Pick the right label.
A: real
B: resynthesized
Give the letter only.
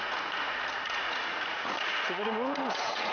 B